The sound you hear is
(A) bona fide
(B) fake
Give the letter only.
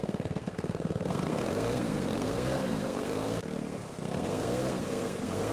B